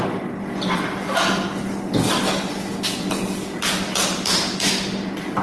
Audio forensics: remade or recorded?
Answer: recorded